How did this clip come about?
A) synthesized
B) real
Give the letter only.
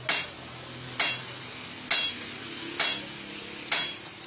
B